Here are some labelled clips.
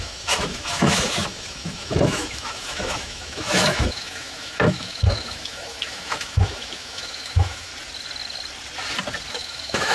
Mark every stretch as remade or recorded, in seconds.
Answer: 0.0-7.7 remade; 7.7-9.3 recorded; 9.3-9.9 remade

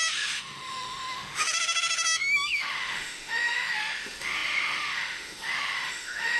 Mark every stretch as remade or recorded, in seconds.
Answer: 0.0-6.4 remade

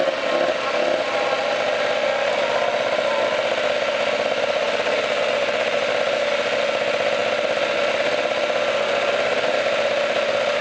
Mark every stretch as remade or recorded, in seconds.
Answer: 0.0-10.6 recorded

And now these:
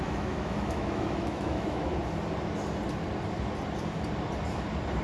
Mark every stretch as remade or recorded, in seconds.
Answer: 0.0-1.9 remade; 1.9-5.0 recorded

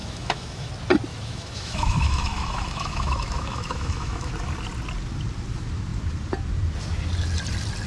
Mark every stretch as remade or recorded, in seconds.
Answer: 0.0-0.7 remade; 0.7-1.1 recorded; 1.1-4.3 remade; 4.3-7.9 recorded

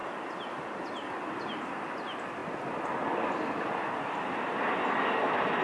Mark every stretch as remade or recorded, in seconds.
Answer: 0.0-5.6 recorded